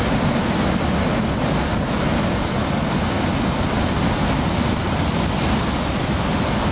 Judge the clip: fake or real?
real